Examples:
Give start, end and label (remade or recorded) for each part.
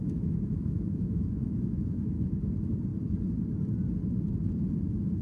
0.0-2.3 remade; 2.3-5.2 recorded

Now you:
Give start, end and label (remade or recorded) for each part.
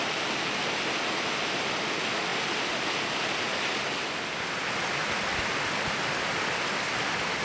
0.0-7.4 recorded